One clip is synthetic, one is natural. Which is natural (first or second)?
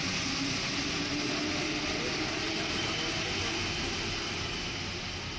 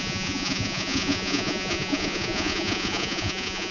first